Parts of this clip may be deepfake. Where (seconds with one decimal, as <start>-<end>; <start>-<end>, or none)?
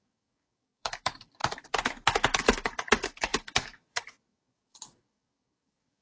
0.0-1.4; 2.4-6.0